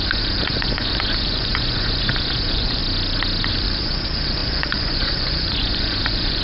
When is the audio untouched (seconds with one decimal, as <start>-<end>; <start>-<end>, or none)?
2.8-3.5